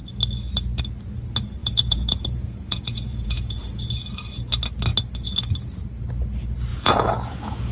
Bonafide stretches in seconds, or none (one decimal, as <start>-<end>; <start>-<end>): 0.0-1.6; 3.9-6.7